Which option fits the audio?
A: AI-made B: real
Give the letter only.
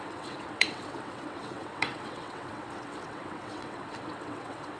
A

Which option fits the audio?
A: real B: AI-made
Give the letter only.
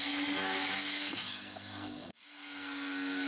B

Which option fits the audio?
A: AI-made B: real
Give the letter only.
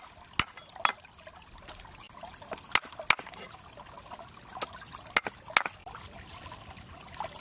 B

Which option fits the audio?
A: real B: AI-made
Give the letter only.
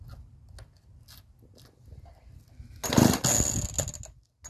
A